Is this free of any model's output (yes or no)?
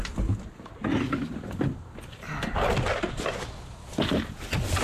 yes